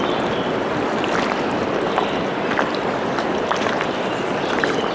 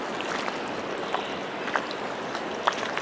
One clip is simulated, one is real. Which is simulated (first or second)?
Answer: first